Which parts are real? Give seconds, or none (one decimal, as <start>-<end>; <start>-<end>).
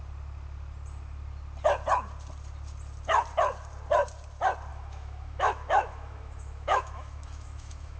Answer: 0.0-4.7